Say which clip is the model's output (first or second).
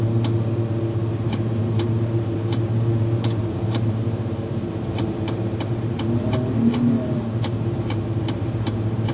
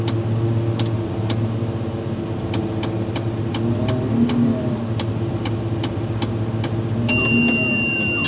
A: first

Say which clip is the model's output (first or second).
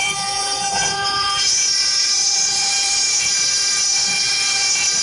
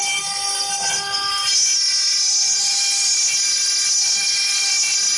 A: first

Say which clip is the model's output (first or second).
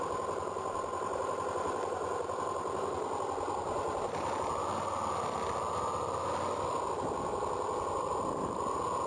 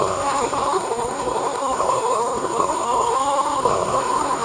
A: second